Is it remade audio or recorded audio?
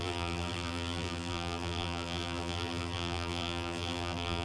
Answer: remade